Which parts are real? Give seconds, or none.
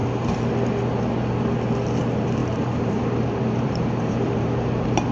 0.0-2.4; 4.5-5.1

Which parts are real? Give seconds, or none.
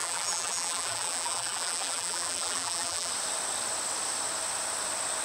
3.1-5.2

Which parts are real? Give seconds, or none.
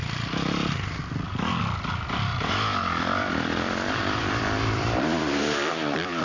0.0-2.3